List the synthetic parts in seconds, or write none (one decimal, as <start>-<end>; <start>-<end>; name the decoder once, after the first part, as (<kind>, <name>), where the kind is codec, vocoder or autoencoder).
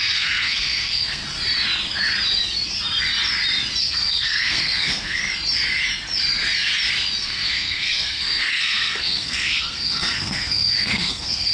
0.0-1.2 (codec, SNAC); 3.8-5.2; 7.2-11.5